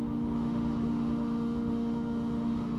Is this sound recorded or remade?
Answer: remade